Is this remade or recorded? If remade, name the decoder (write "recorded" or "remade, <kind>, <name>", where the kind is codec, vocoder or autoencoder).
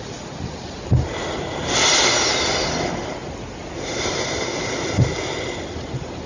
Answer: recorded